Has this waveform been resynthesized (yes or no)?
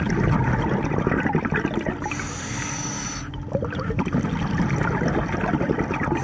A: no